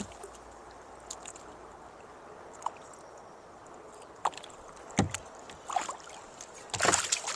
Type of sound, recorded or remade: recorded